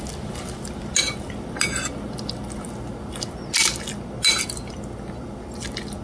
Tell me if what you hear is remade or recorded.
recorded